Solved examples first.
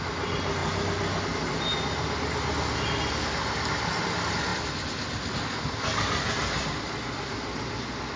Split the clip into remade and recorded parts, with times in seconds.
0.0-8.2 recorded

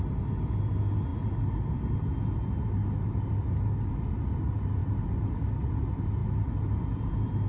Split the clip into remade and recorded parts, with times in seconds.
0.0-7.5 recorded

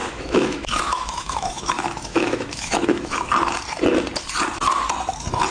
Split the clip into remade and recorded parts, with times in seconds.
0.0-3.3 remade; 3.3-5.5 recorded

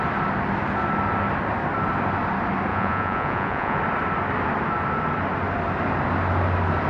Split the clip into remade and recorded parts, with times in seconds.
0.0-2.7 recorded; 2.7-3.8 remade; 3.8-6.9 recorded

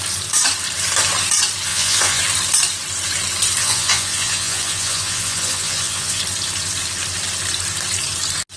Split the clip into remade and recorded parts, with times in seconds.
0.0-1.7 recorded; 1.7-2.2 remade; 2.2-3.6 recorded; 3.6-6.2 remade; 6.2-8.6 recorded

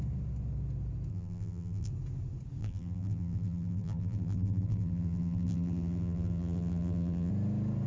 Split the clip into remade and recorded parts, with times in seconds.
0.0-1.1 recorded; 1.1-1.9 remade; 1.9-2.6 recorded; 2.6-7.3 remade; 7.3-7.9 recorded